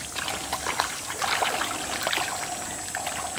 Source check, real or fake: real